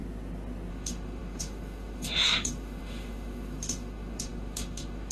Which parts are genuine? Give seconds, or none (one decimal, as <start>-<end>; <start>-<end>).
0.0-0.7